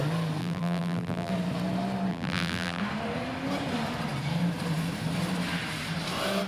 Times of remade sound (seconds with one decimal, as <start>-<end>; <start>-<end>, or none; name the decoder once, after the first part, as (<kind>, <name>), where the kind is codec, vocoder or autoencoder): 0.4-1.3 (vocoder, BigVGAN v2); 2.1-2.8